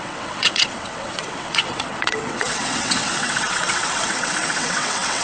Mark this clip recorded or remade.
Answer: remade